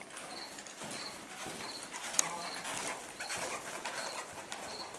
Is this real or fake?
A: fake